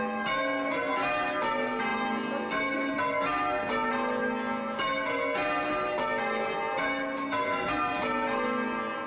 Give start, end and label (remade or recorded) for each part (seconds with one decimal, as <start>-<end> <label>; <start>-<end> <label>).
0.0-9.1 recorded